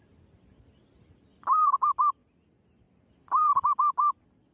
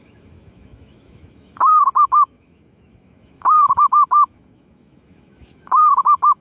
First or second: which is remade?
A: second